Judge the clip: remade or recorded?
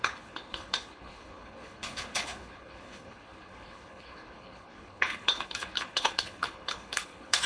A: remade